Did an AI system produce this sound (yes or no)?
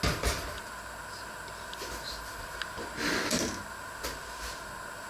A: no